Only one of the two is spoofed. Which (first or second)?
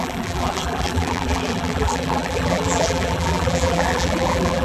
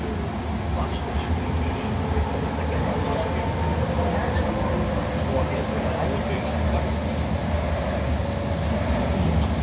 first